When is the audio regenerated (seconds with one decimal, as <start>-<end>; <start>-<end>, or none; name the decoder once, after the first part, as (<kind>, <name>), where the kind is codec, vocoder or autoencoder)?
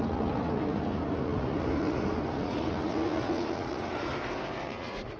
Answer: 0.0-4.1 (vocoder, Vocos); 4.6-5.2